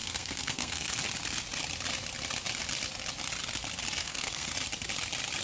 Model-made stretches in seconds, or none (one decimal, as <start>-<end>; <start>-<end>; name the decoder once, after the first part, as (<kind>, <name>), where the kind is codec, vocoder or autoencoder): 0.0-1.0 (codec, SNAC); 4.0-4.5